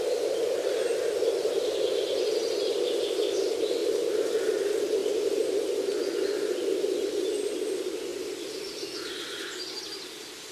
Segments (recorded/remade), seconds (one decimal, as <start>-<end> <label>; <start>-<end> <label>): 0.0-3.8 recorded; 3.8-4.3 remade; 4.3-10.5 recorded